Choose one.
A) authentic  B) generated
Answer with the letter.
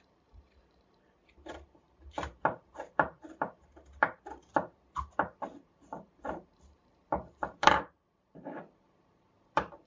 B